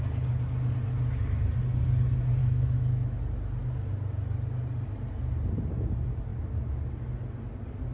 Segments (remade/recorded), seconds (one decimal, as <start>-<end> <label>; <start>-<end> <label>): 0.0-2.4 recorded; 2.4-3.2 remade; 3.2-7.9 recorded